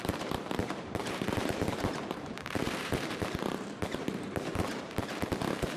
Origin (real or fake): fake